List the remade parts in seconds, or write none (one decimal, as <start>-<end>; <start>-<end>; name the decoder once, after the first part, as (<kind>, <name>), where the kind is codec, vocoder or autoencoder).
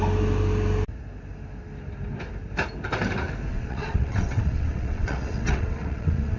3.5-6.4 (vocoder, WaveNeXt)